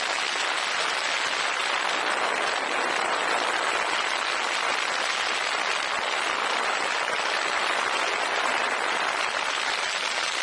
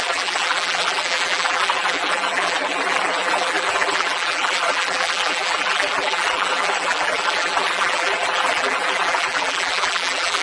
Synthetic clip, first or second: second